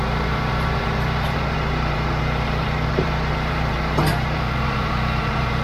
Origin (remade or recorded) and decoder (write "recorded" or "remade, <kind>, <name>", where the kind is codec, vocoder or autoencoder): remade, vocoder, BigVGAN v2